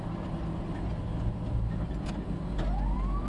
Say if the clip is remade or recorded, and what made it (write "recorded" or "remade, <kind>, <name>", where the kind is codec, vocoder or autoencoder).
recorded